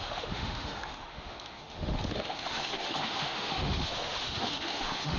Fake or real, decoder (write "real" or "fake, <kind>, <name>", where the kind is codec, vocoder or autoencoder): fake, autoencoder, DAC-VAE